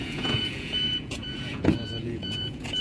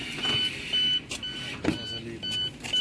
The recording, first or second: second